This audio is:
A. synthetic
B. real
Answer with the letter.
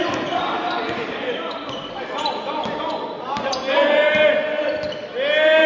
B